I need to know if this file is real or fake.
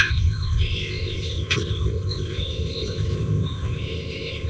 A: fake